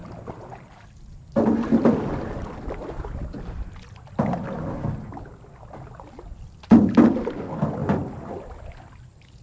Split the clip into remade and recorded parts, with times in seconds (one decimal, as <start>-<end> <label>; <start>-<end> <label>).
0.0-7.8 recorded; 7.8-8.4 remade; 8.4-9.4 recorded